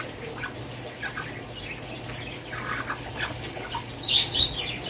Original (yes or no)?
yes